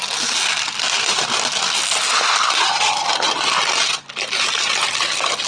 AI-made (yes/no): no